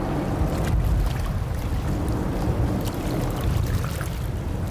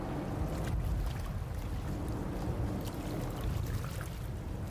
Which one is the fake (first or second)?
first